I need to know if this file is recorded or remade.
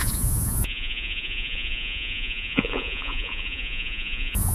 remade